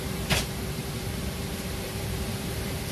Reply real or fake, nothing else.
fake